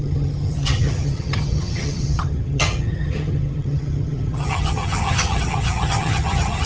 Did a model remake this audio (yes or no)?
yes